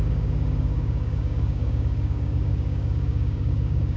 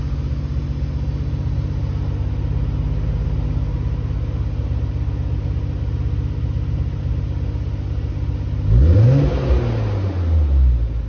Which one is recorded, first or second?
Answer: second